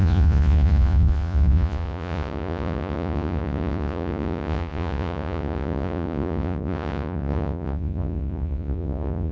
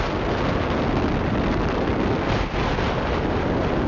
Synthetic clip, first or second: first